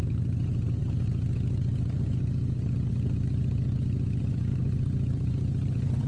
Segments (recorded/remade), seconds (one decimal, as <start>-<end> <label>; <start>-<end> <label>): 0.0-4.5 recorded; 4.5-6.1 remade